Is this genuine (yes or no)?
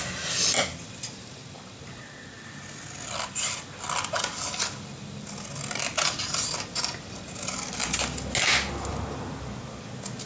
yes